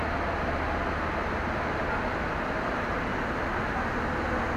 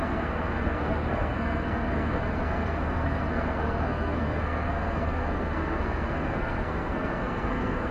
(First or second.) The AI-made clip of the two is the second